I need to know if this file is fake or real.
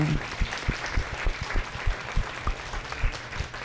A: real